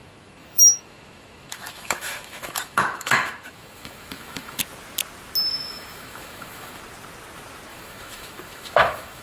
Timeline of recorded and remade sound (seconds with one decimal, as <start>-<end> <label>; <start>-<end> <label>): 0.0-4.6 remade; 4.6-5.5 recorded; 5.5-6.8 remade; 6.8-7.7 recorded; 7.7-9.2 remade